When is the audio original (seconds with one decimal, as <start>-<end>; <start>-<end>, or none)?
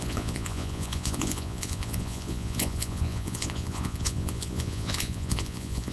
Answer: none